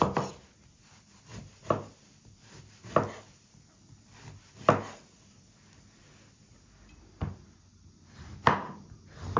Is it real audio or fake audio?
real